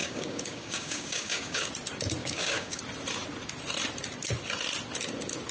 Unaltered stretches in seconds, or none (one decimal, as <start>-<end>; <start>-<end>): 1.7-2.2; 2.8-5.5